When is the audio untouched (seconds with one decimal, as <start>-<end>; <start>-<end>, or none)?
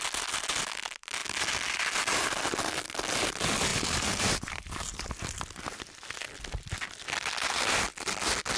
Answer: 0.0-3.7; 7.6-8.6